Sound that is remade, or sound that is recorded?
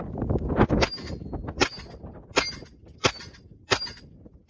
recorded